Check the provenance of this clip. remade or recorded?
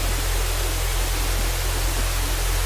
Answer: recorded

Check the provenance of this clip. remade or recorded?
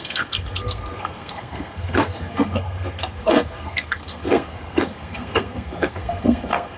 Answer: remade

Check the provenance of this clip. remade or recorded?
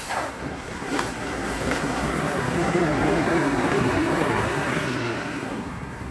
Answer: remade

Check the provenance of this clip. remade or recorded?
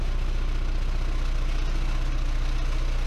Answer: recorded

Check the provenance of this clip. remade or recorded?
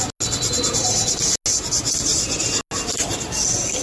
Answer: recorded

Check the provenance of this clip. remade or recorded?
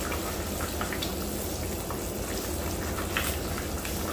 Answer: recorded